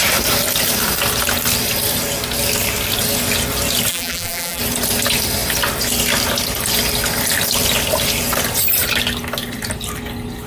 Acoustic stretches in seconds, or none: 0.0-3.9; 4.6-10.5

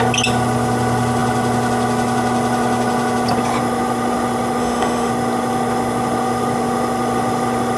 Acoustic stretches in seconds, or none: 0.0-4.6; 5.1-7.8

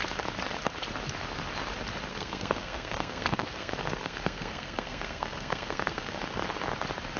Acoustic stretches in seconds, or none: 0.0-2.1; 6.2-7.2

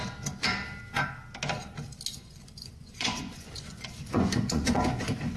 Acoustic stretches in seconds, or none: 0.0-2.1

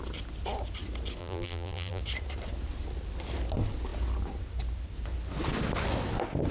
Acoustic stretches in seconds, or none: 0.0-1.2; 2.0-6.5

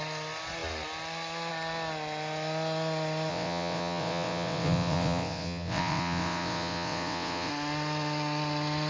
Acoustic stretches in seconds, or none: 0.0-3.3; 7.5-8.9